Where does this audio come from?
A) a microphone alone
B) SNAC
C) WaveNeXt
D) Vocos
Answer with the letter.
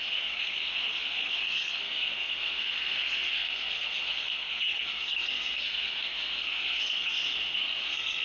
B